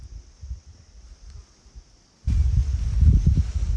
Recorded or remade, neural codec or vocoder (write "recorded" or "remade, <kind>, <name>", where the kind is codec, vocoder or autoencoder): recorded